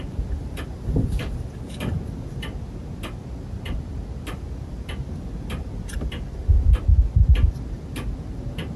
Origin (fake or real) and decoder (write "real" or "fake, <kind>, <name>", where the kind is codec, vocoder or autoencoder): real